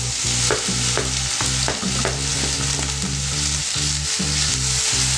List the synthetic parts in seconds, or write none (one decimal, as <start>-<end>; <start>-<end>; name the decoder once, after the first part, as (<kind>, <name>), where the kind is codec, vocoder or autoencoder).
none